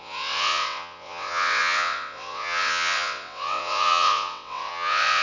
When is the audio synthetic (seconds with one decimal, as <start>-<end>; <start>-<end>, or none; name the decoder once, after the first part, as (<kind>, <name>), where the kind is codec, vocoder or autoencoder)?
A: 0.0-5.2 (vocoder, WaveNeXt)